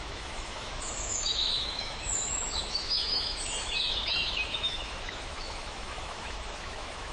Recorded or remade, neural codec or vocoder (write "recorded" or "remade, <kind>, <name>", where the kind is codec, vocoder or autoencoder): remade, autoencoder, DAC-VAE